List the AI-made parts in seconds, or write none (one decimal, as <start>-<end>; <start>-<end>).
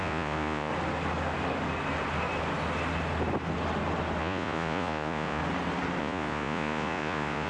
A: 0.0-0.7; 4.2-5.4; 6.0-7.5